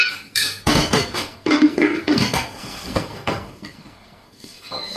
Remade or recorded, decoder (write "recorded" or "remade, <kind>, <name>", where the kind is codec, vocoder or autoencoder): remade, codec, SNAC